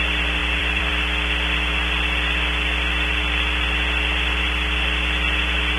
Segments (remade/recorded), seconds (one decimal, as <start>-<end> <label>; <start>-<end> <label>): 0.0-0.4 recorded; 0.4-0.9 remade; 0.9-5.8 recorded